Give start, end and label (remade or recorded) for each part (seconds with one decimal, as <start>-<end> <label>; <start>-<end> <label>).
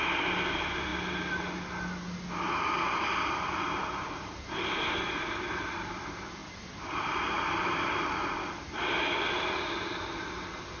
0.0-10.8 recorded